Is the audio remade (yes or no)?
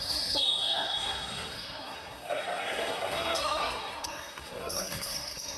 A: yes